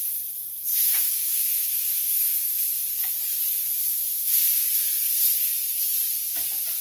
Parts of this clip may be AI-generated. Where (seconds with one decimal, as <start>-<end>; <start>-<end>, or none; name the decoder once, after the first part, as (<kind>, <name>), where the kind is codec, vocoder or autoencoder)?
0.7-2.4 (autoencoder, DAC-VAE)